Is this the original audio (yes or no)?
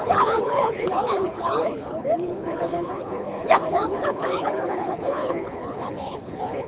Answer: no